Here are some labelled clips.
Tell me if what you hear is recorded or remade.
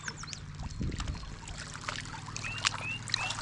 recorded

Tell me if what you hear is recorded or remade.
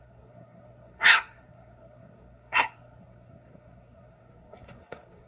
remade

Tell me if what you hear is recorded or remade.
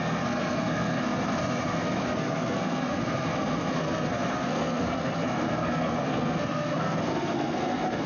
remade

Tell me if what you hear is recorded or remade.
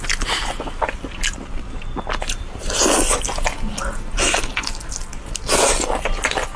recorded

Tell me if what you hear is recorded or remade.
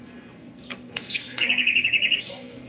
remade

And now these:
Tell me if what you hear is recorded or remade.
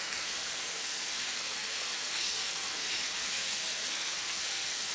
remade